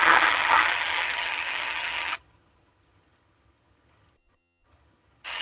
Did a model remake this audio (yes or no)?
yes